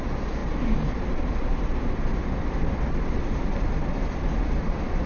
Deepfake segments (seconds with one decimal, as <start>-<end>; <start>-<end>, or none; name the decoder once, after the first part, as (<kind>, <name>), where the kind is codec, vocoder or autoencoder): none